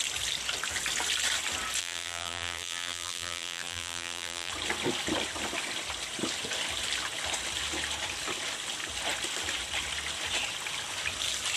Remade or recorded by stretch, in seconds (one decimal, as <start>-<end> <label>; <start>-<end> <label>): 0.0-1.8 recorded; 1.8-4.5 remade; 4.5-11.6 recorded